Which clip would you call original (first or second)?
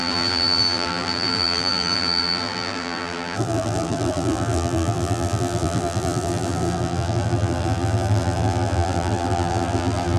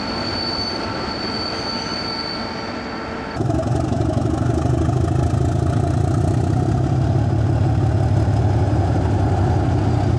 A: second